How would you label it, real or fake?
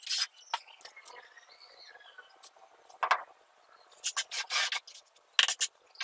real